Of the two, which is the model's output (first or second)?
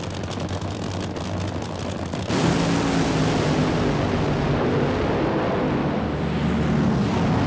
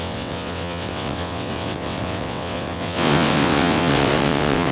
second